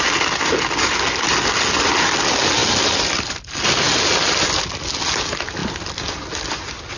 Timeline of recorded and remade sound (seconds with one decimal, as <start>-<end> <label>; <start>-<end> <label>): 0.0-7.0 recorded